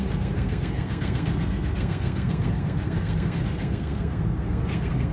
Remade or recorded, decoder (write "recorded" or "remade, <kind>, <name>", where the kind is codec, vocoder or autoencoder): remade, codec, SNAC